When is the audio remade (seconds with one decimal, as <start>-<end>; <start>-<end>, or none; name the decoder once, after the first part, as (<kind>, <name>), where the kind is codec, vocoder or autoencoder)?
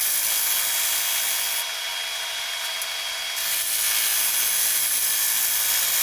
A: none